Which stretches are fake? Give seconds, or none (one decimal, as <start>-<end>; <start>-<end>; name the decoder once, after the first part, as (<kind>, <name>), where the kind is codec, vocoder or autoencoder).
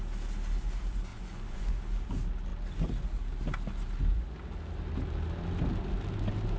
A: 1.1-1.8 (vocoder, Vocos)